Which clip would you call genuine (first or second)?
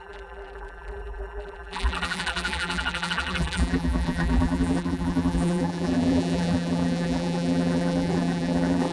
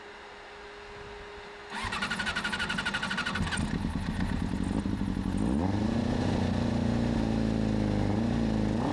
second